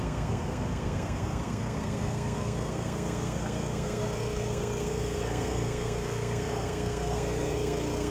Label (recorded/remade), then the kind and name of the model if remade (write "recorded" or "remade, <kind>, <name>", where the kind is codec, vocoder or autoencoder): remade, codec, SNAC